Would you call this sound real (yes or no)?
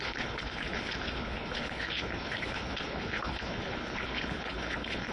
no